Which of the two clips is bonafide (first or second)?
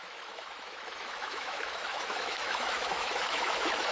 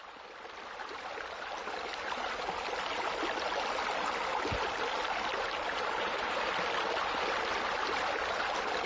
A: second